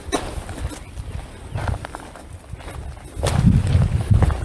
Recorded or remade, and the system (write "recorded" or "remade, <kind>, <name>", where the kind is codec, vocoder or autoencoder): recorded